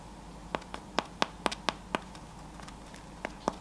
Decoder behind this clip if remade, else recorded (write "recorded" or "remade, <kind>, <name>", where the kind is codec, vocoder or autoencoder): recorded